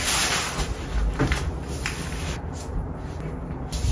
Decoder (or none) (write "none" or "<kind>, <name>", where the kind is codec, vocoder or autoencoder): none